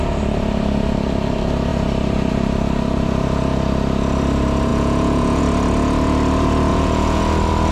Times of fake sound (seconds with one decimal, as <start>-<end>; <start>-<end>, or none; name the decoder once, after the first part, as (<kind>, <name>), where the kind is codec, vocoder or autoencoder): 4.7-5.4 (vocoder, Vocos); 6.7-7.2